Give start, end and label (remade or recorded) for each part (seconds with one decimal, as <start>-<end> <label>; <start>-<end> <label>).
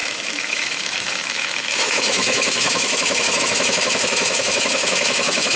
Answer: 0.0-5.6 remade